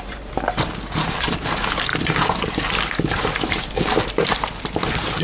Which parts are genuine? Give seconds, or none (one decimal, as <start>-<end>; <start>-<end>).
none